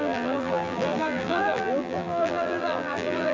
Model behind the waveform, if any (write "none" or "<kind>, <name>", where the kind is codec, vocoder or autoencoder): vocoder, BigVGAN v2